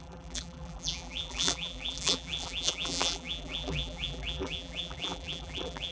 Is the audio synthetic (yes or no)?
yes